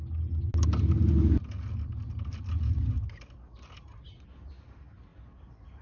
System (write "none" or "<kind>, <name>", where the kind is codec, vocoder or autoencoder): none